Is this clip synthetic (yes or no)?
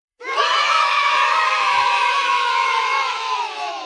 yes